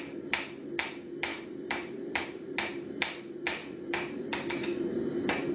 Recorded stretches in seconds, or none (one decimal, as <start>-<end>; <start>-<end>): 0.0-1.3; 2.2-3.6; 4.9-5.5

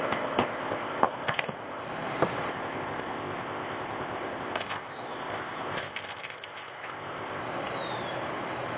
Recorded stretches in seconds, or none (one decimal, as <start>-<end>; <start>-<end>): 1.8-2.5; 7.4-8.8

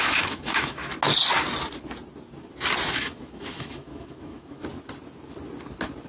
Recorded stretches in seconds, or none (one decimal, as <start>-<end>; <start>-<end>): 0.8-2.9; 4.6-6.1

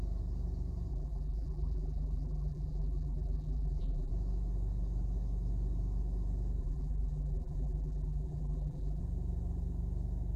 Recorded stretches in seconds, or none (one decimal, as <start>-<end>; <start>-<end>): 0.0-0.9; 4.1-6.6; 9.0-10.4

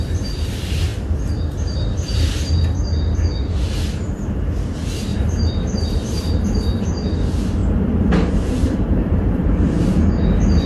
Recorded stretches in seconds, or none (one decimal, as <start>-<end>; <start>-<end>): 0.0-5.1; 6.4-7.6; 9.8-10.7

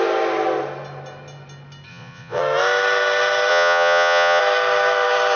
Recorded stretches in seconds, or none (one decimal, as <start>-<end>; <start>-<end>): 0.0-1.9; 2.4-3.5; 4.4-5.4

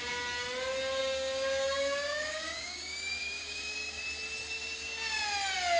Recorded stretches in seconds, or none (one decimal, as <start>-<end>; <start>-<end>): 0.0-1.0; 4.0-4.6; 5.2-5.8